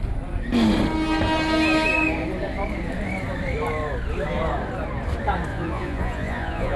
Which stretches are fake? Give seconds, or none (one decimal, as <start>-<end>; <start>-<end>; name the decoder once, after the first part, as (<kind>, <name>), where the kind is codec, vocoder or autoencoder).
5.5-6.8 (vocoder, Vocos)